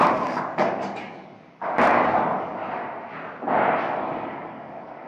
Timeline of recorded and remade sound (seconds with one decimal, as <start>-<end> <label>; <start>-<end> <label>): 0.0-2.6 remade; 2.6-3.8 recorded; 3.8-5.1 remade